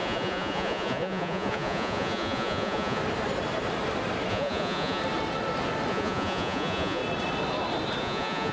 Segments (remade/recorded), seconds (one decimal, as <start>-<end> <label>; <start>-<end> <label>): 0.0-3.0 remade; 3.0-4.3 recorded; 4.3-5.0 remade; 5.0-5.9 recorded; 5.9-7.0 remade; 7.0-8.0 recorded; 8.0-8.5 remade